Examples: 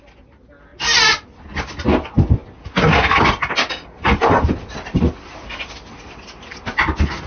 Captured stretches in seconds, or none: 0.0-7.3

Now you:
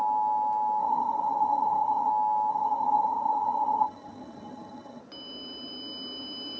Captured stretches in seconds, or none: 0.0-0.8; 2.1-2.5; 5.0-6.6

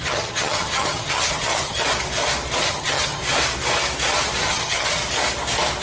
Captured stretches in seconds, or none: 1.8-2.6; 3.2-4.4; 5.0-5.8

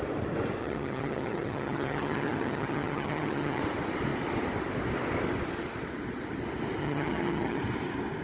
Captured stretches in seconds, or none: 0.0-0.6; 3.6-6.8; 7.6-8.2

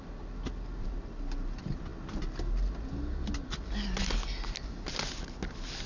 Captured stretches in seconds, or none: 0.0-5.9

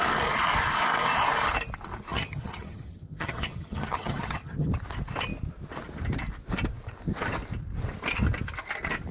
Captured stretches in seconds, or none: 0.0-2.1; 4.7-9.1

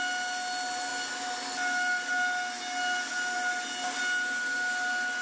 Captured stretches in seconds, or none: 0.0-5.2

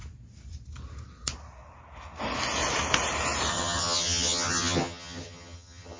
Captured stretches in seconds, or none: 0.0-3.5